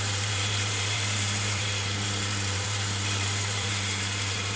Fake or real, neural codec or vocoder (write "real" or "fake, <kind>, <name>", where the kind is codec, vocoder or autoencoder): fake, vocoder, BigVGAN v2